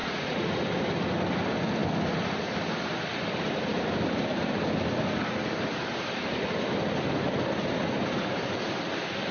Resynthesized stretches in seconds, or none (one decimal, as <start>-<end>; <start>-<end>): 0.0-0.6